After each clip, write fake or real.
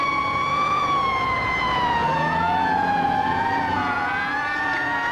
fake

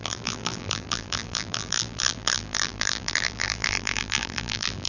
fake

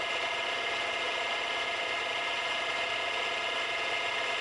real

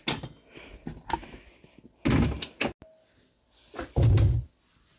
real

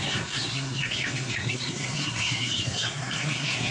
fake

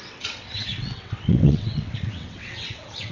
fake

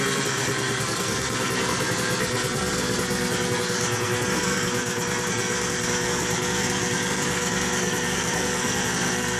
fake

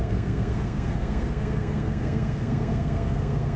fake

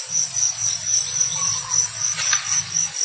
real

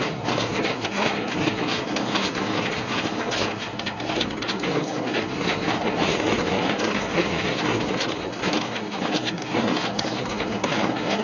fake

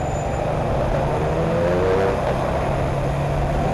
real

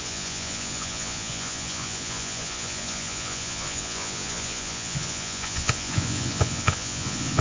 fake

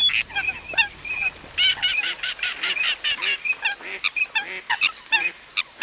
real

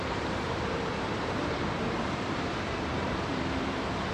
fake